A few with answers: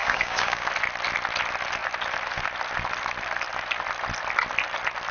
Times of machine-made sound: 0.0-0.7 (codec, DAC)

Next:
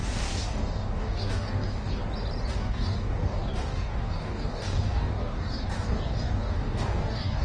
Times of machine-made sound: 0.0-2.0 (codec, DAC); 2.5-7.4

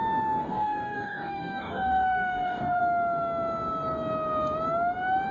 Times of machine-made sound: 0.4-2.8 (codec, DAC)